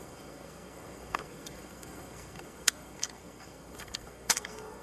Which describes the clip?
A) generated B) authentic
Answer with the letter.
A